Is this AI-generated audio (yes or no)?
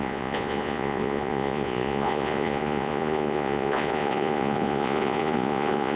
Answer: yes